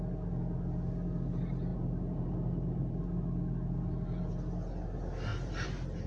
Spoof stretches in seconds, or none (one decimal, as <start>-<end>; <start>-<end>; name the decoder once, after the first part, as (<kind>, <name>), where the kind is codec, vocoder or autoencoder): 1.7-3.0 (vocoder, BigVGAN v2); 5.3-6.1